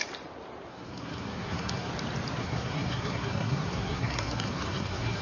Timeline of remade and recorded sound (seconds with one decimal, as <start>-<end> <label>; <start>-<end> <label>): 0.0-0.7 recorded; 0.7-1.9 remade; 1.9-2.4 recorded; 2.4-5.2 remade